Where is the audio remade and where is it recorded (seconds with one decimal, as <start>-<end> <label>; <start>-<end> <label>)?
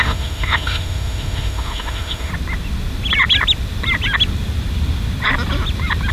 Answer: 0.0-2.3 remade; 2.3-6.1 recorded